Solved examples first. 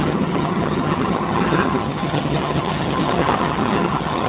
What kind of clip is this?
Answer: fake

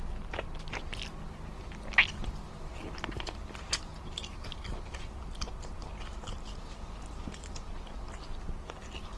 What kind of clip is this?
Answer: real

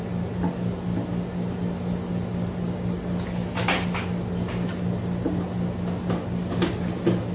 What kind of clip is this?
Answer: real